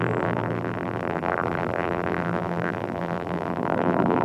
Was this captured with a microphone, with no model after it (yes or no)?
no